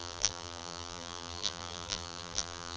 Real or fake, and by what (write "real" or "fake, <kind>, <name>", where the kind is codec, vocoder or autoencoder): fake, vocoder, BigVGAN v2